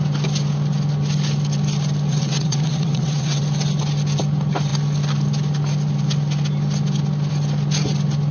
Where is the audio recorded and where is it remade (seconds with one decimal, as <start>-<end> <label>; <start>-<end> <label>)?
0.0-2.1 recorded; 2.1-3.4 remade; 3.4-8.3 recorded